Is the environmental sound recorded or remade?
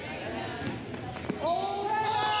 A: recorded